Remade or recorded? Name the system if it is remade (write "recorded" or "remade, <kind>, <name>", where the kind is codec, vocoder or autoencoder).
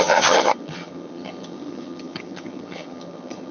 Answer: remade, vocoder, HiFi-GAN